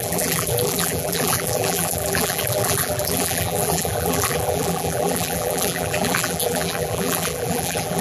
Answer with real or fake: fake